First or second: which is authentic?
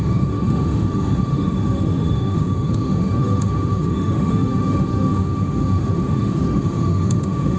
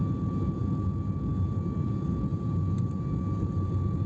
second